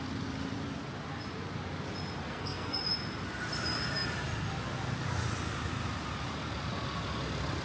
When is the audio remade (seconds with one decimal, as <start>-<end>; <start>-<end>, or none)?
2.2-2.8